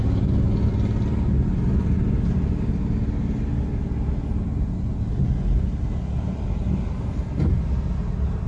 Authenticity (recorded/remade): recorded